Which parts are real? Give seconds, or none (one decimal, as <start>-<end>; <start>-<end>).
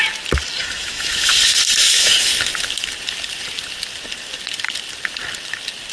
0.0-0.6; 1.3-1.8; 2.3-5.9